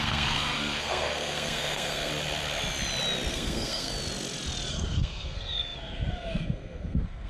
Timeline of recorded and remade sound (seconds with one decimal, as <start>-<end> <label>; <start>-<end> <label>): 0.0-2.1 remade; 2.1-3.3 recorded; 3.3-3.9 remade; 3.9-4.7 recorded; 4.7-7.3 remade

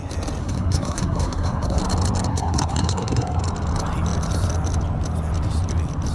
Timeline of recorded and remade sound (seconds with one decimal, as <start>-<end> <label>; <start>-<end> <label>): 0.0-0.4 recorded; 0.4-1.8 remade; 1.8-2.3 recorded; 2.3-3.4 remade; 3.4-6.1 recorded

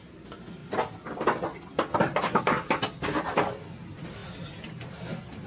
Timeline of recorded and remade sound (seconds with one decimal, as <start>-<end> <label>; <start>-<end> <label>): 0.0-5.5 recorded

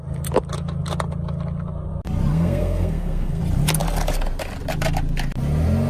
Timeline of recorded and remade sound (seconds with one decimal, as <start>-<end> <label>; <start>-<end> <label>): 0.0-2.3 recorded; 2.3-3.4 remade; 3.4-5.9 recorded

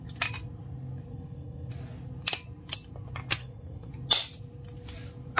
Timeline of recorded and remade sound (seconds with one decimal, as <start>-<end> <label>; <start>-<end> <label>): 0.0-1.1 recorded; 1.1-1.7 remade; 1.7-3.4 recorded; 3.4-3.9 remade; 3.9-5.4 recorded

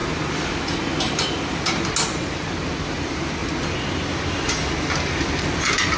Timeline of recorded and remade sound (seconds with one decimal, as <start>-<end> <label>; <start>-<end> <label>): 0.0-6.0 recorded